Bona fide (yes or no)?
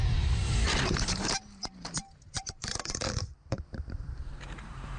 no